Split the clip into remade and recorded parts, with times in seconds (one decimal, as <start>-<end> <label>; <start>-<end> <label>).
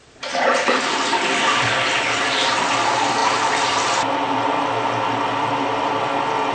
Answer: 0.0-0.5 recorded; 0.5-2.5 remade; 2.5-3.2 recorded; 3.2-4.7 remade; 4.7-6.5 recorded